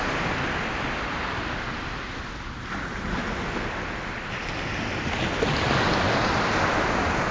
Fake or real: real